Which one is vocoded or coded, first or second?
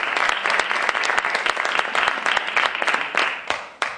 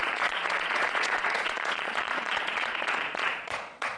second